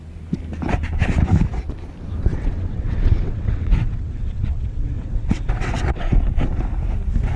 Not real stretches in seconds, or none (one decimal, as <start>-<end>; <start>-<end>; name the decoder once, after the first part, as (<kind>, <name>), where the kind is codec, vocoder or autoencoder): 2.3-6.1 (vocoder, WaveNeXt)